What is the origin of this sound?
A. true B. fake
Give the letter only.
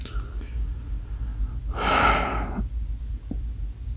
A